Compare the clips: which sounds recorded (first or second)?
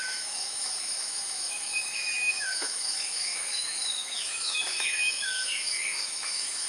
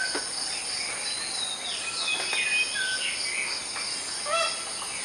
second